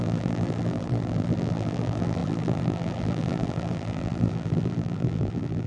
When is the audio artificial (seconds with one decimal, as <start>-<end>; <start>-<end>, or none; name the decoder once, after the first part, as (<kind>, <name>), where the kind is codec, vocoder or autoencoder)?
0.0-5.7 (vocoder, BigVGAN v2)